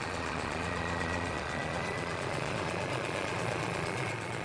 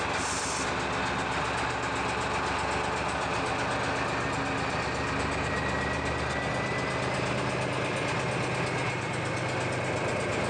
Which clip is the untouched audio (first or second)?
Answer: second